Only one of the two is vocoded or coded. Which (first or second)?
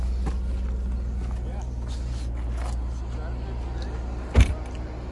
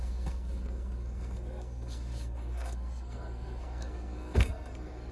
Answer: second